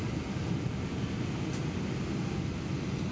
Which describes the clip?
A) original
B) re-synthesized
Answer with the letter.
A